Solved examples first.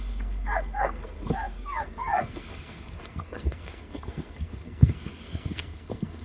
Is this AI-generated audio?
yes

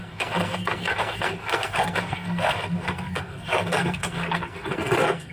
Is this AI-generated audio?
yes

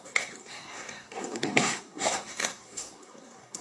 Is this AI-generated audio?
yes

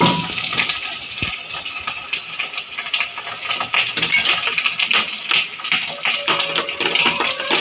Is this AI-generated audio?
no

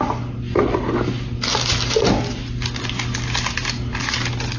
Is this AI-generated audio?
no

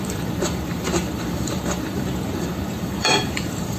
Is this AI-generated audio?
yes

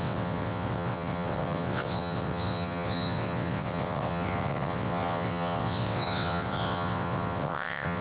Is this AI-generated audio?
yes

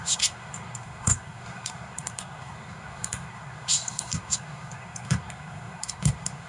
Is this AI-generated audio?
yes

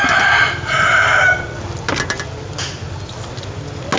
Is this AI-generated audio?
no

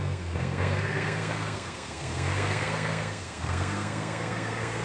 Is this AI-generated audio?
yes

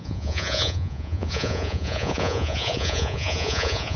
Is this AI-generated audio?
yes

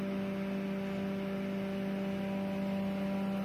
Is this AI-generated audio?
no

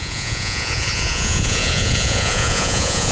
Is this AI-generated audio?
yes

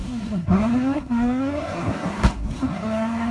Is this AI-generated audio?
yes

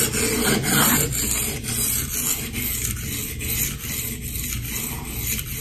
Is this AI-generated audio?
no